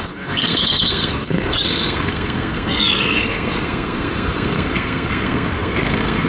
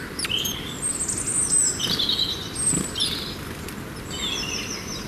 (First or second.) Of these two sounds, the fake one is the first